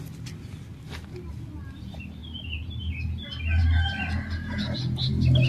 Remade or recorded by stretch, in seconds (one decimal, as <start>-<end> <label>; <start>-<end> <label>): 0.0-5.5 recorded